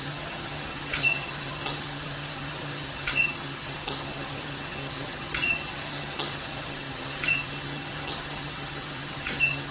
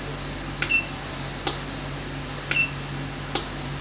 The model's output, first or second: first